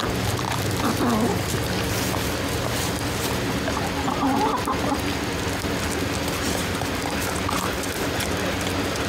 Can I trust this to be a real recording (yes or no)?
yes